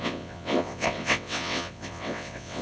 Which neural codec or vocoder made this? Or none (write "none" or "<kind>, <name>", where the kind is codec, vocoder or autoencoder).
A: vocoder, WaveNeXt